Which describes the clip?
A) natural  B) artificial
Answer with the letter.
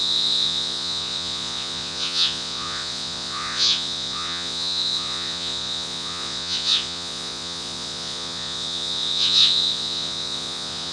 B